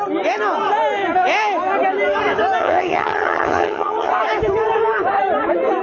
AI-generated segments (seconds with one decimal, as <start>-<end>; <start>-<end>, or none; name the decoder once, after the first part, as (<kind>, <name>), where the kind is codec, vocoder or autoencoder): 2.6-4.1 (vocoder, HiFi-GAN)